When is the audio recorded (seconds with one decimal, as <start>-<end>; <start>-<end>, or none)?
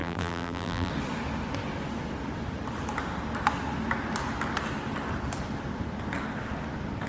0.9-7.1